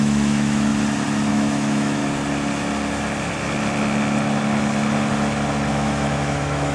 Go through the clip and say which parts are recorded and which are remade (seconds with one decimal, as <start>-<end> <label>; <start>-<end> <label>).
0.0-0.7 remade; 0.7-1.3 recorded; 1.3-2.0 remade; 2.0-5.7 recorded; 5.7-6.7 remade